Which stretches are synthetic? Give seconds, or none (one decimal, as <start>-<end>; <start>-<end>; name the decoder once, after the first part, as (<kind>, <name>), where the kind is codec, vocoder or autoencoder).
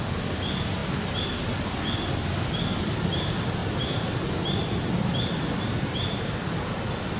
3.6-6.3 (vocoder, BigVGAN v2)